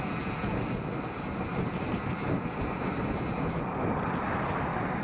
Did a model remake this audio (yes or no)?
no